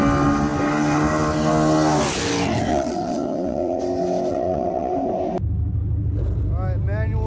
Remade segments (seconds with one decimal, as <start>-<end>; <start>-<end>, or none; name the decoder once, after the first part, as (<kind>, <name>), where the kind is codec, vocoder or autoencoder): 2.7-3.8 (vocoder, Vocos); 4.3-4.9